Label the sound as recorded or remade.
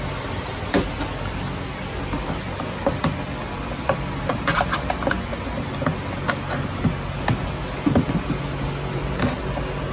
recorded